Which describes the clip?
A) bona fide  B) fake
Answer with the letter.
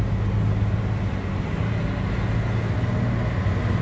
A